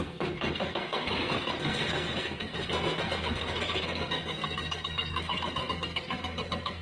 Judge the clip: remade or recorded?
remade